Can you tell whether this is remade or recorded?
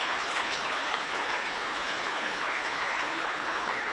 remade